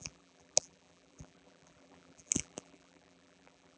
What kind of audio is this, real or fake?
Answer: fake